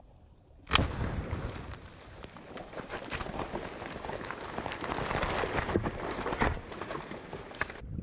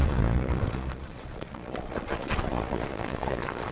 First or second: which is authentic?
first